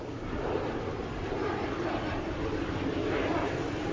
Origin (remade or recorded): remade